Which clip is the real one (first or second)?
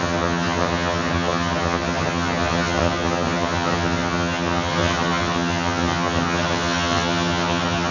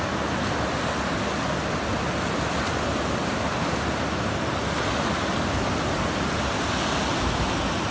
second